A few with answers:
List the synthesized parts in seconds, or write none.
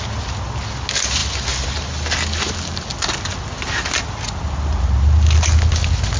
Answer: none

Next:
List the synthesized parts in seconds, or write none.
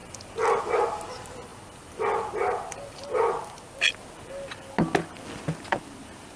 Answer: none